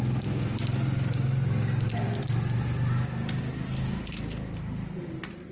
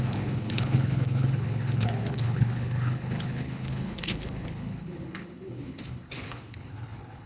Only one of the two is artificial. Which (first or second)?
second